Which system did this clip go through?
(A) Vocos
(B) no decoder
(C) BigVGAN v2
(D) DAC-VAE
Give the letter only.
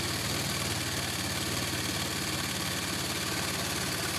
B